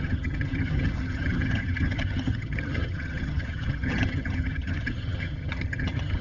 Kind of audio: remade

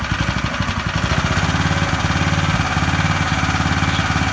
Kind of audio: recorded